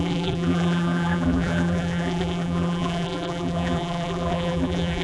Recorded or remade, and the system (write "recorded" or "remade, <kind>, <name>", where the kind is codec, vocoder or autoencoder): remade, vocoder, BigVGAN v2